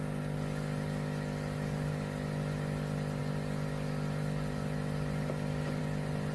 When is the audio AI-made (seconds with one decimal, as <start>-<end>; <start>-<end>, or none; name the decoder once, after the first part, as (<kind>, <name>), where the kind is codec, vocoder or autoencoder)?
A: none